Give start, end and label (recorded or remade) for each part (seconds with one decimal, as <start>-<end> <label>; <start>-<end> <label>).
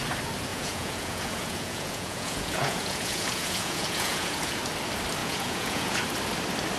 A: 0.0-0.5 recorded; 0.5-4.6 remade; 4.6-5.2 recorded; 5.2-6.0 remade; 6.0-6.8 recorded